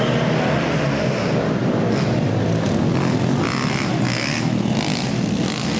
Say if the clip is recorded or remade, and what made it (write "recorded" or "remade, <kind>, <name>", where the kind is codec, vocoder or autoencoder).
recorded